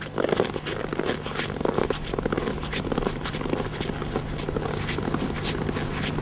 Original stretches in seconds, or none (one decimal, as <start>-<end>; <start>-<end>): 0.0-6.2